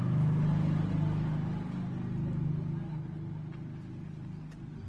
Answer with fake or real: real